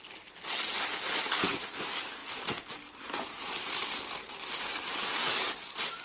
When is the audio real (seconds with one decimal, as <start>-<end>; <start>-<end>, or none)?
0.0-2.2; 4.0-6.0